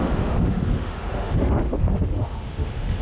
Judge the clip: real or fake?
fake